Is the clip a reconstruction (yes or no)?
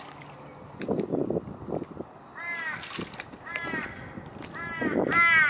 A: no